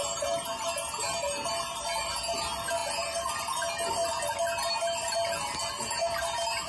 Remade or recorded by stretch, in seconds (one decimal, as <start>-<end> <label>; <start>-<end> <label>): 0.0-6.7 recorded